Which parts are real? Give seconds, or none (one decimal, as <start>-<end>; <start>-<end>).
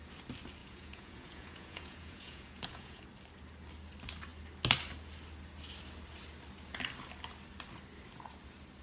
0.0-0.6; 3.0-8.8